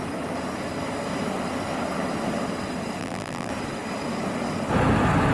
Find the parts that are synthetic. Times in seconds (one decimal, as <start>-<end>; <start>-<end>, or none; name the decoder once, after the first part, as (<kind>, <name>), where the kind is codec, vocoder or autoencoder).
3.0-3.5 (vocoder, BigVGAN v2)